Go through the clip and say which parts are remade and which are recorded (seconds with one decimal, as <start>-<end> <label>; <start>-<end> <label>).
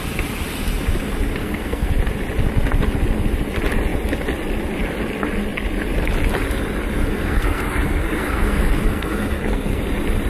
0.0-1.4 recorded; 1.4-1.9 remade; 1.9-7.1 recorded; 7.1-9.8 remade; 9.8-10.3 recorded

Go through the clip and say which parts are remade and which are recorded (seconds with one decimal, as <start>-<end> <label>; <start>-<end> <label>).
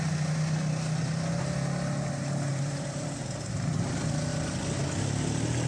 0.0-2.5 recorded; 2.5-3.1 remade; 3.1-5.7 recorded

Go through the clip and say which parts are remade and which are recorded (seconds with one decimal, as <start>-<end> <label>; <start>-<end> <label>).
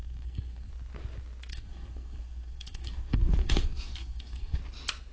0.0-0.7 remade; 0.7-1.5 recorded; 1.5-4.6 remade; 4.6-5.1 recorded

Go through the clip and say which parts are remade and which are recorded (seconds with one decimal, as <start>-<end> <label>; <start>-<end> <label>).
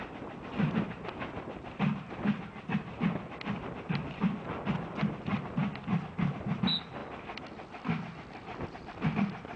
0.0-9.6 recorded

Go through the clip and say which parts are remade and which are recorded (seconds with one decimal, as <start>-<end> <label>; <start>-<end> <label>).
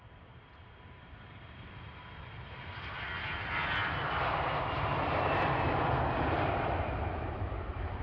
0.0-3.8 remade; 3.8-6.1 recorded; 6.1-8.0 remade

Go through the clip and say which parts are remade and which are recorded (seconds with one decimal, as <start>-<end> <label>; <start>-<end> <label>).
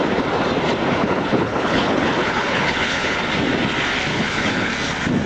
0.0-1.0 recorded; 1.0-3.2 remade; 3.2-4.1 recorded; 4.1-4.7 remade; 4.7-5.3 recorded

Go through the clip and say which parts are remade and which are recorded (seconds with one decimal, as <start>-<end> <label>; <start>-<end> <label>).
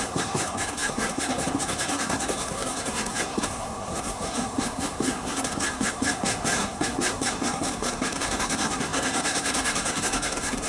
0.0-10.7 remade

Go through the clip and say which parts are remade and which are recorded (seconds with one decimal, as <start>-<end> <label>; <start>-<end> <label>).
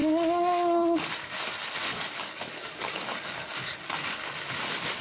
0.0-1.1 remade; 1.1-1.8 recorded; 1.8-3.7 remade; 3.7-5.0 recorded